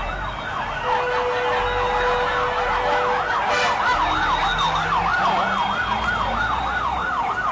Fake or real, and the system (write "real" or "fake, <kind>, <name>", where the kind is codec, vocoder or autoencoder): real